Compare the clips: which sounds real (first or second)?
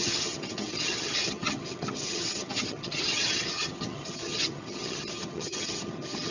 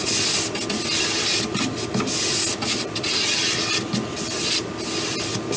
second